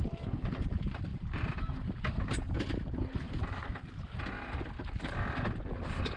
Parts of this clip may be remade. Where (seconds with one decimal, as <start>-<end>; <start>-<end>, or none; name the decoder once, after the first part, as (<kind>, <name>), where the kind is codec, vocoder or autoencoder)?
none